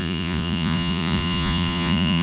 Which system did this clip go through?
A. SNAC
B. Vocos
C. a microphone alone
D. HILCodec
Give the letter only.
B